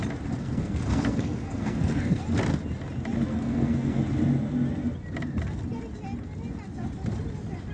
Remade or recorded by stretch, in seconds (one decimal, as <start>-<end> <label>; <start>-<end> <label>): 0.0-0.4 recorded; 0.4-2.2 remade; 2.2-3.3 recorded; 3.3-4.0 remade; 4.0-7.7 recorded